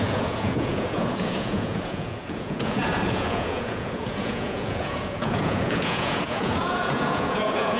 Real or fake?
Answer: fake